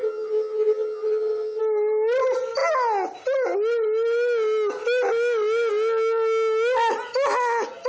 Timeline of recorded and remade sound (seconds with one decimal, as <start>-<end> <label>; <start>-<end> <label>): 0.0-1.6 remade; 1.6-7.9 recorded